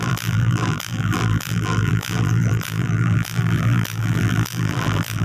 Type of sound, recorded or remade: remade